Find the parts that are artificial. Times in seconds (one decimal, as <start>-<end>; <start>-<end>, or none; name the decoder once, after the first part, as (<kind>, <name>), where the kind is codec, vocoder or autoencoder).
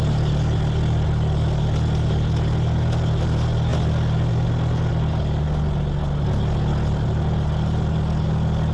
none